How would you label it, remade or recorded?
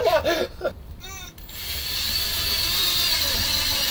remade